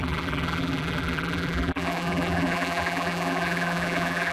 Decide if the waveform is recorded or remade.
remade